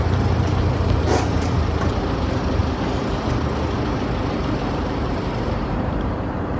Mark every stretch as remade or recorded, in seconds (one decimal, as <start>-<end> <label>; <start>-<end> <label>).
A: 0.0-2.6 remade; 2.6-4.4 recorded; 4.4-6.6 remade